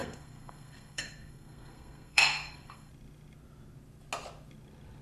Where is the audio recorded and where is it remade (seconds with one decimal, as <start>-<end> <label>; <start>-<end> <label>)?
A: 0.0-2.9 remade; 2.9-5.0 recorded